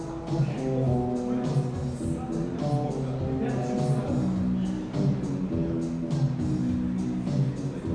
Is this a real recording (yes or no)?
yes